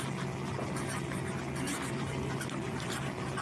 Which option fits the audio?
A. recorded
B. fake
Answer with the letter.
A